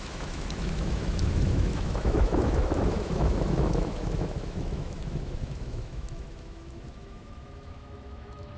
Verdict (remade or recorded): remade